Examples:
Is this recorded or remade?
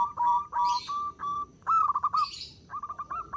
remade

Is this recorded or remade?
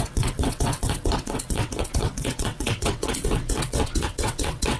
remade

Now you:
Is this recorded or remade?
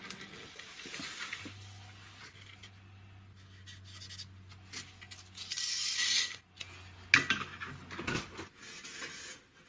recorded